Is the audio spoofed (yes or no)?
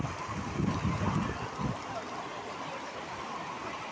no